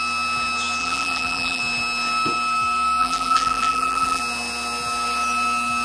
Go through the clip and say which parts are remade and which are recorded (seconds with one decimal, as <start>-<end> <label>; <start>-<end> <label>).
0.0-0.8 recorded; 0.8-1.6 remade; 1.6-3.0 recorded; 3.0-4.2 remade; 4.2-5.8 recorded